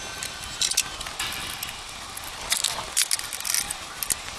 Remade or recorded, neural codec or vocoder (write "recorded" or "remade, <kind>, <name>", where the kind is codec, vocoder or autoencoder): recorded